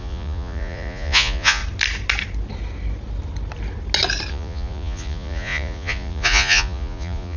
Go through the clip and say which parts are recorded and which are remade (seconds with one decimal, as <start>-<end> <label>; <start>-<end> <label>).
0.0-1.6 remade; 1.6-4.3 recorded; 4.3-7.4 remade